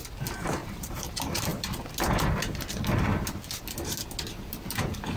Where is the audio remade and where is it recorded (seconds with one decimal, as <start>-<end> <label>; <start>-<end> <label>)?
0.0-0.6 recorded; 0.6-1.1 remade; 1.1-5.2 recorded